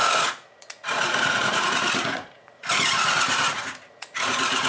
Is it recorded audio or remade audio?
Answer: remade